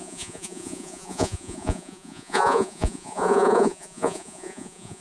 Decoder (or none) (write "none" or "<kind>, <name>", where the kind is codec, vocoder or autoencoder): vocoder, Vocos